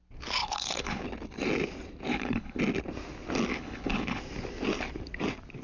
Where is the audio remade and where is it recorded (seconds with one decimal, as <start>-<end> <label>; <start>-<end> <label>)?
0.0-0.4 recorded; 0.4-1.0 remade; 1.0-2.1 recorded; 2.1-2.6 remade; 2.6-3.5 recorded; 3.5-4.2 remade; 4.2-5.6 recorded